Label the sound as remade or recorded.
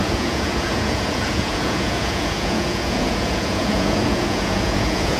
remade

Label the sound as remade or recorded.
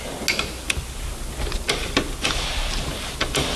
recorded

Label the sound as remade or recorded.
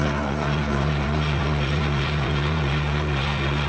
remade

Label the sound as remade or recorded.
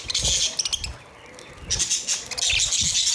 recorded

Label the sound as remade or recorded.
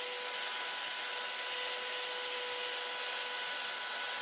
recorded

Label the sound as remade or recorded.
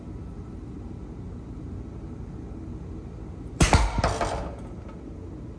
recorded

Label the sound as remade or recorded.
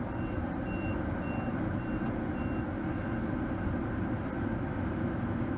recorded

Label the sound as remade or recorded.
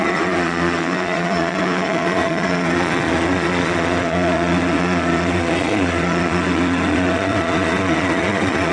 remade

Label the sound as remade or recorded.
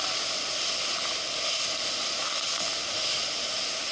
recorded